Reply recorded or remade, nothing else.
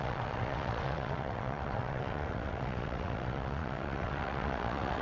remade